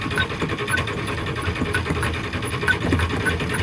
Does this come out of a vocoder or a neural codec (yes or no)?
no